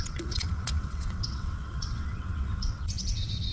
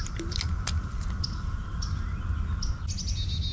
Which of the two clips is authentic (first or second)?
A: second